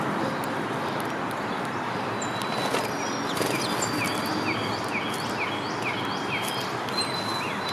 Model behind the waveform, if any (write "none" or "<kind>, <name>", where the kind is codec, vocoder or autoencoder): none